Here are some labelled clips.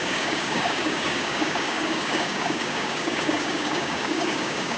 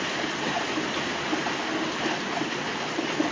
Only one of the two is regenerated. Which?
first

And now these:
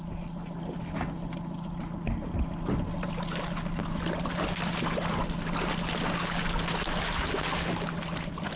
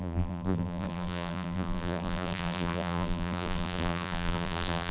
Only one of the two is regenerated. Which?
second